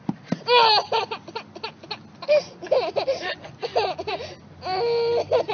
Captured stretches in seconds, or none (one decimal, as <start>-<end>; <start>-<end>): 0.0-5.5